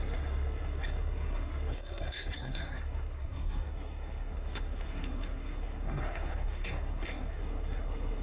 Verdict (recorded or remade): remade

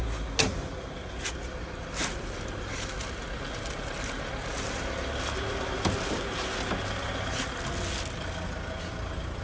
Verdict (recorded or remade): recorded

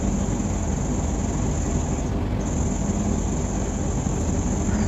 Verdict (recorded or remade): recorded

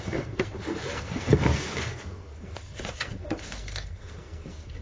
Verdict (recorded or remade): remade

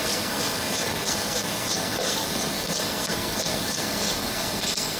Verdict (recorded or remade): remade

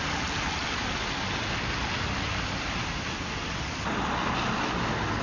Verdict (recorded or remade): recorded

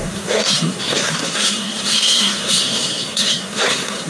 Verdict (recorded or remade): remade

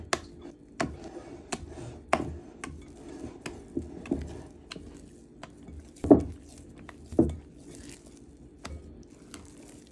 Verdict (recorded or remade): recorded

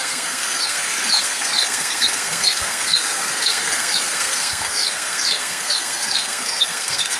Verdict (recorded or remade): remade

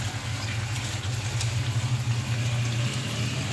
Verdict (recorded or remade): recorded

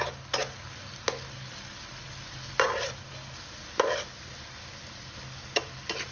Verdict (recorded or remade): recorded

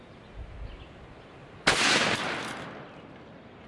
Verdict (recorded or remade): recorded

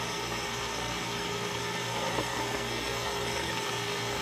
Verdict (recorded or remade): remade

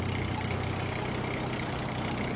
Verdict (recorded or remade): recorded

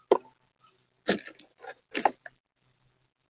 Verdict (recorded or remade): recorded